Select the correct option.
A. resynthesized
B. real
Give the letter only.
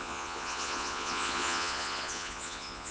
A